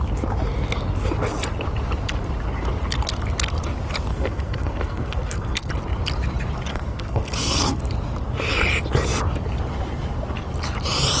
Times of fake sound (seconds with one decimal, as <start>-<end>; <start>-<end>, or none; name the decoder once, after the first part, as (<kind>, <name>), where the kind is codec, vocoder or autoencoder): 4.1-5.7 (codec, SNAC); 6.7-7.8